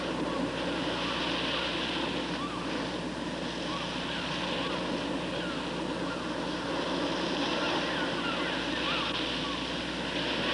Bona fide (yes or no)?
yes